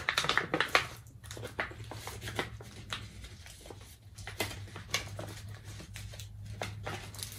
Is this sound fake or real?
real